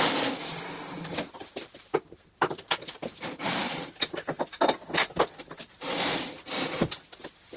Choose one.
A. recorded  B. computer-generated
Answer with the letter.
A